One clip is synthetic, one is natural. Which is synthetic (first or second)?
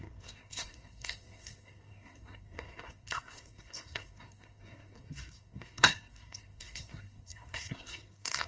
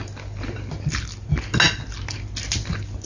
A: first